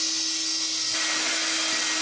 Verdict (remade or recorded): recorded